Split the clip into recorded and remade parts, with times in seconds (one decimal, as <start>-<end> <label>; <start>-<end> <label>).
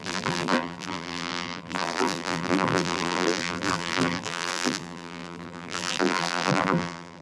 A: 0.0-7.2 remade